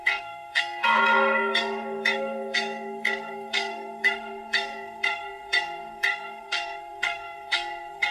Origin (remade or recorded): remade